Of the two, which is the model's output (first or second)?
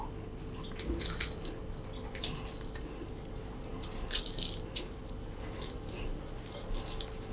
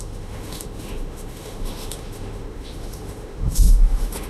second